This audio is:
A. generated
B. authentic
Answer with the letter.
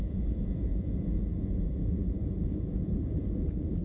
A